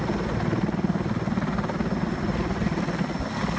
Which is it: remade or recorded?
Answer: recorded